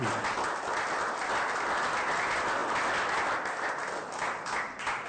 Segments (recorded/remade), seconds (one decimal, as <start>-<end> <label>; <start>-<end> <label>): 0.0-5.1 recorded